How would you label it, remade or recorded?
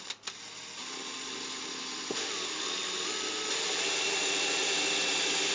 recorded